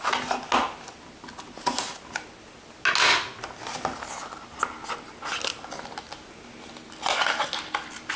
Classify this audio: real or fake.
real